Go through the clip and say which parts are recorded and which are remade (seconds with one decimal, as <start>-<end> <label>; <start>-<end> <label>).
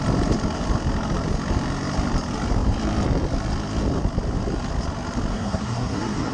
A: 0.0-5.3 recorded; 5.3-6.3 remade